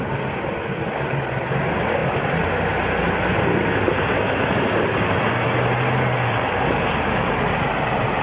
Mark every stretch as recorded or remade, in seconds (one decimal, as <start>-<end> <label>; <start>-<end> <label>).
0.0-8.2 recorded

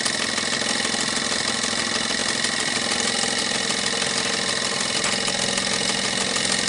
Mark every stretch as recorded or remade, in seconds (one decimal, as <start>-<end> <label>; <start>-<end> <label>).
0.0-6.7 recorded

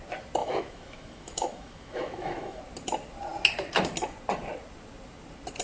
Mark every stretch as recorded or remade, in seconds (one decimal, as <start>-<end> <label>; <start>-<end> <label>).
0.0-0.4 recorded; 0.4-2.6 remade; 2.6-5.6 recorded